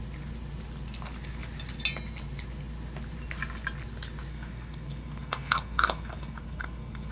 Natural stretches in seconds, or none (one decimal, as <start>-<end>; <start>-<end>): 0.0-4.3